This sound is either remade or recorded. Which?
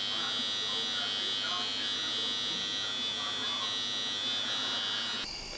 recorded